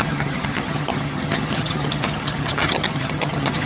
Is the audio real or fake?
fake